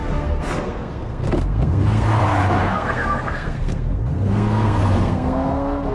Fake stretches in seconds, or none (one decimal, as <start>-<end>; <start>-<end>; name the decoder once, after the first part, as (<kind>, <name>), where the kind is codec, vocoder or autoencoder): 0.0-2.2 (codec, SNAC); 2.6-5.9